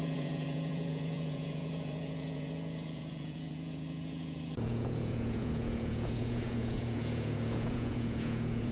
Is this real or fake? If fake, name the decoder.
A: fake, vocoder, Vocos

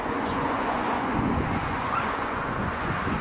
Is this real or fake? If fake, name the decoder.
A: fake, vocoder, Vocos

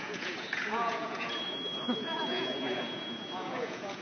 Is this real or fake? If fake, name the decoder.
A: fake, vocoder, Vocos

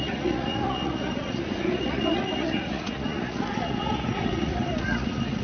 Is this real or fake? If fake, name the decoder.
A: fake, vocoder, Vocos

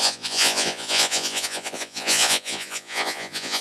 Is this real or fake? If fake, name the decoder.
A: fake, vocoder, Vocos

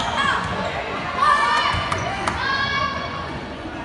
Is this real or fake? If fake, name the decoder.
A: fake, vocoder, Vocos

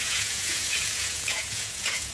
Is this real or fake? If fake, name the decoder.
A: fake, vocoder, Vocos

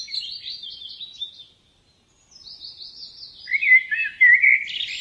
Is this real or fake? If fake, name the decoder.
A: real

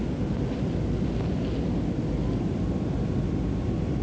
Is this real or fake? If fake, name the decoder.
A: real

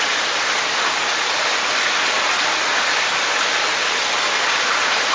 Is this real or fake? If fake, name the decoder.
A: real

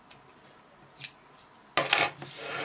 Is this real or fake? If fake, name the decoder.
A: real